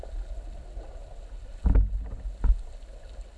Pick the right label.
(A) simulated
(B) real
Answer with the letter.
B